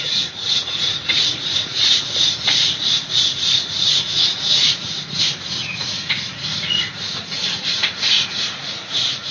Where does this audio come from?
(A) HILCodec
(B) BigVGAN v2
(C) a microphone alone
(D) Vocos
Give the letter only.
D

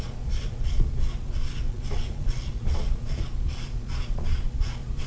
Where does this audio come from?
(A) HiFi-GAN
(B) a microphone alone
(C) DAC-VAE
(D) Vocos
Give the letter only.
D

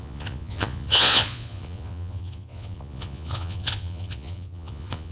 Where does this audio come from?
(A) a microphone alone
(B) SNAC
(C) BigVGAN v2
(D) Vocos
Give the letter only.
D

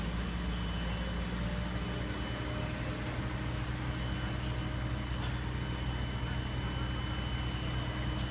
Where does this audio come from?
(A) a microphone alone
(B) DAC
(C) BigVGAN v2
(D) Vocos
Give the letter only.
A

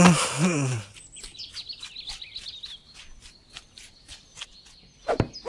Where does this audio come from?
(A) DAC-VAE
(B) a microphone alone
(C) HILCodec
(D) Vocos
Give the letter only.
B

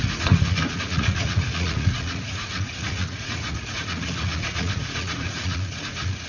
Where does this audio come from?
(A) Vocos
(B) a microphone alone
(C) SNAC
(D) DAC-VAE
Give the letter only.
A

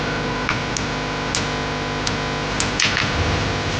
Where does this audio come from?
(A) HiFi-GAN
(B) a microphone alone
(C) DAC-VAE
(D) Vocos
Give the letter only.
B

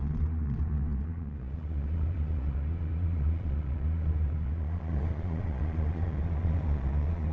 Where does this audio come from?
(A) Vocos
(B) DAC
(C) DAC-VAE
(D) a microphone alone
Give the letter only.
A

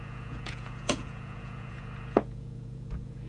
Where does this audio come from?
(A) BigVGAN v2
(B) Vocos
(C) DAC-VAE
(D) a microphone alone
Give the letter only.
B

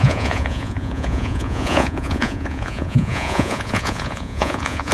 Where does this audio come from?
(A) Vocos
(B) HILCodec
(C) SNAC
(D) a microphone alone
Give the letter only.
A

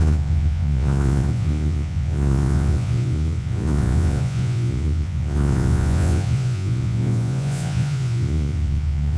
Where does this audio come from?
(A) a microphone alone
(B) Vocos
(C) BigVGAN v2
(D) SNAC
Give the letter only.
B